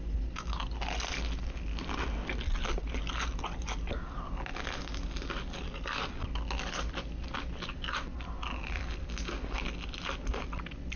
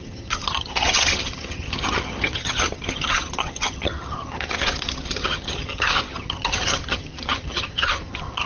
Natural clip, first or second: first